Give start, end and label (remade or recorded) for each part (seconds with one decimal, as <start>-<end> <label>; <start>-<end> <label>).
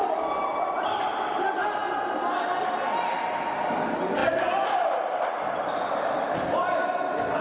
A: 0.0-7.4 recorded